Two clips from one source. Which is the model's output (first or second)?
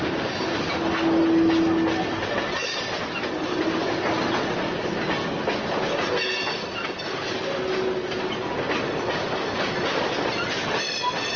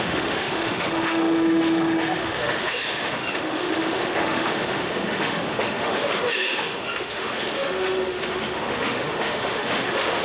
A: second